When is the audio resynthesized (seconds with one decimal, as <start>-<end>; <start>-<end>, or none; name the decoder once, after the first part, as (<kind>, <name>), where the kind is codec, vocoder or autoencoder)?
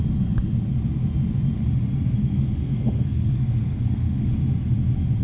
2.2-4.3 (codec, SNAC)